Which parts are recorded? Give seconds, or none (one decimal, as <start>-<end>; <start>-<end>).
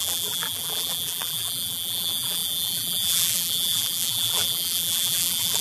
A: none